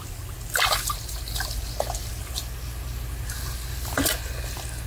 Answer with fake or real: real